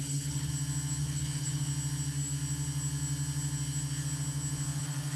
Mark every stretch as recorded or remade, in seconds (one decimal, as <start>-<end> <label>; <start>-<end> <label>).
0.0-0.5 remade; 0.5-1.0 recorded; 1.0-1.7 remade; 1.7-4.8 recorded; 4.8-5.2 remade

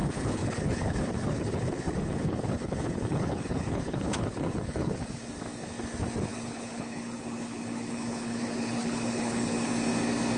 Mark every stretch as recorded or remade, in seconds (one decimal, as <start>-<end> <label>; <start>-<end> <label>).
0.0-5.2 remade; 5.2-6.3 recorded; 6.3-9.7 remade; 9.7-10.4 recorded

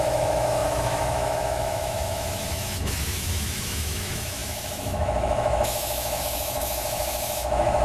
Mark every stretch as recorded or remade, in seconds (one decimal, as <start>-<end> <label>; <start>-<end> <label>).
0.0-7.8 remade

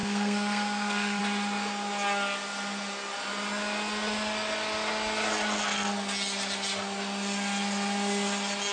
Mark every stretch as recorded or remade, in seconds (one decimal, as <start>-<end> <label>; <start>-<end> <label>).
0.0-1.2 remade; 1.2-8.7 recorded

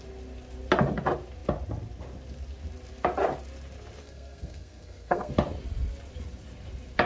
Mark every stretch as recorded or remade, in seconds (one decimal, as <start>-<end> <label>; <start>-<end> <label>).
0.0-4.0 recorded; 4.0-5.3 remade; 5.3-7.1 recorded